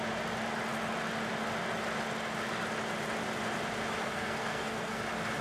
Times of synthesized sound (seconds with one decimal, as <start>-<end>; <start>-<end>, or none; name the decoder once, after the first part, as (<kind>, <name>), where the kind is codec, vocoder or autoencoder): 4.0-5.0 (codec, SNAC)